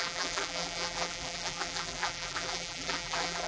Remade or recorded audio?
remade